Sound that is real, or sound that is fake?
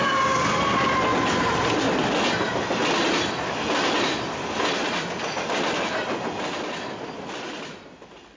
real